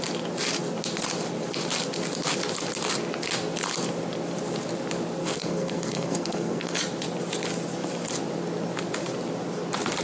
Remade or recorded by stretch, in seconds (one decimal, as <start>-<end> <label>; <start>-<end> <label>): 0.0-5.2 recorded; 5.2-6.8 remade; 6.8-10.0 recorded